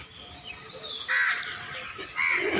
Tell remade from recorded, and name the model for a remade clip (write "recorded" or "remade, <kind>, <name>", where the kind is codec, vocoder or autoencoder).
recorded